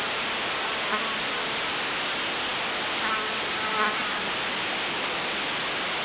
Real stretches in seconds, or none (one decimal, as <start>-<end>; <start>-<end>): 0.0-6.0

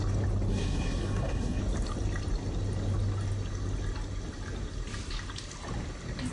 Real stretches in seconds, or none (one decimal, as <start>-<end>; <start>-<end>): 0.0-0.5; 1.6-6.3

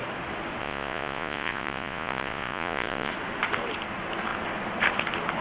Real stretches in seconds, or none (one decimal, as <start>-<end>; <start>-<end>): 0.0-0.6; 3.1-5.4

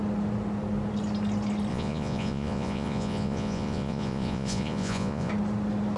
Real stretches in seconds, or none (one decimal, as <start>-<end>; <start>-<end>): 0.0-1.7; 5.3-6.0

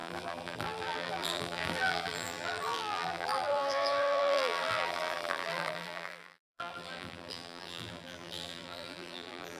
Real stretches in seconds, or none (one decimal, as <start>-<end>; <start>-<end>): none

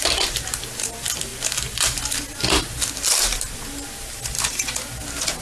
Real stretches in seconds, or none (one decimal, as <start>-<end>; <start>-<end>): 0.0-5.4